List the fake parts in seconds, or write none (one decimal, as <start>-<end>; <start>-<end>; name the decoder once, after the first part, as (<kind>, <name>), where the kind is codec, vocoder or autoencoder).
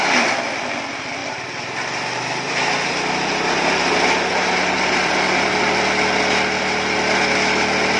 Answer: 1.2-2.9 (vocoder, BigVGAN v2); 4.3-5.3